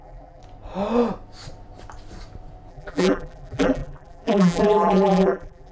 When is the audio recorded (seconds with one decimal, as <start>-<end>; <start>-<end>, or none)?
0.4-2.7